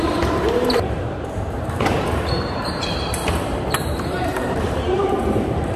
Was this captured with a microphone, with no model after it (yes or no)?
no